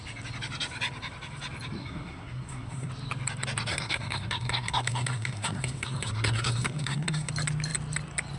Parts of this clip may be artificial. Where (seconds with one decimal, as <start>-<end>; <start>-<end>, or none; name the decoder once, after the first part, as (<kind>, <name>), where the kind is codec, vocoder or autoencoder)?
1.8-2.9 (codec, SNAC); 3.7-7.3